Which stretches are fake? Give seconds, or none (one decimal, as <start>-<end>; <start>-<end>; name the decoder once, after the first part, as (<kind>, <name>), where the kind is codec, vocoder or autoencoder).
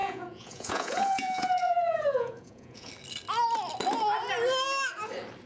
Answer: 0.0-2.9 (vocoder, Vocos)